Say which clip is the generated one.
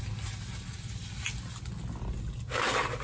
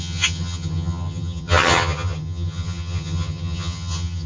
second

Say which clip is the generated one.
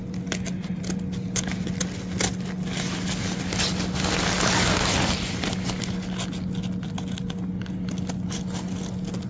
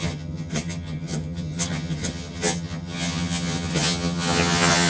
second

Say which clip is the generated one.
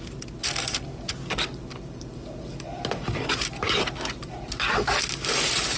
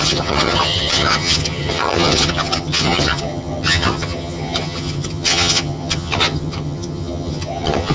second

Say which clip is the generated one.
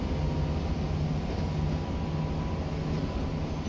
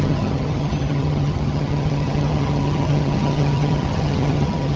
second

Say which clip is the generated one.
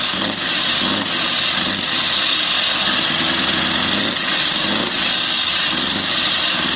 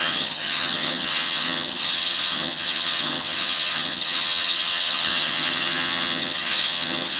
second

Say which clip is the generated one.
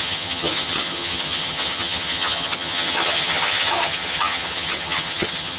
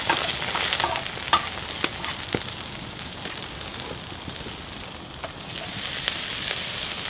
first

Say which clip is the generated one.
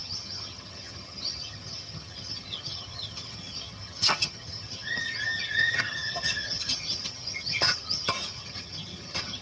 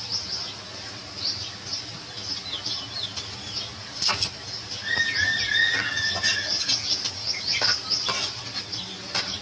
first